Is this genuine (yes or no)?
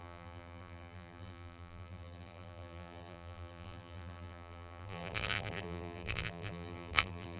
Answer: no